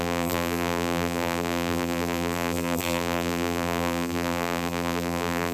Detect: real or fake fake